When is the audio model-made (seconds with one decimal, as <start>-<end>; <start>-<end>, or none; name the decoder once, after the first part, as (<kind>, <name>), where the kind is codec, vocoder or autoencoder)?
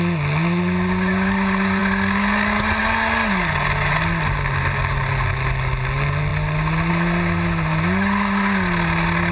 none